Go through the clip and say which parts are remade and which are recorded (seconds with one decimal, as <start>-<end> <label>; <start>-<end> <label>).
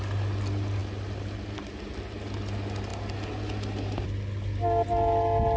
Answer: 0.0-5.6 recorded